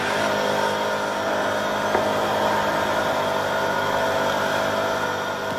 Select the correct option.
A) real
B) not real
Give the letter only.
A